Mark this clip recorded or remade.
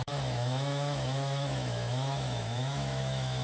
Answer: remade